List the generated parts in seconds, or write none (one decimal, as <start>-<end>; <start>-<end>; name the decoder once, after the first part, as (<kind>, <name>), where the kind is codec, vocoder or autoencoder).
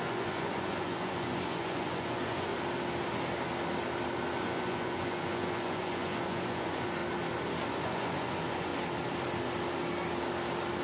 0.0-2.5 (vocoder, Vocos); 4.4-7.0; 7.7-8.7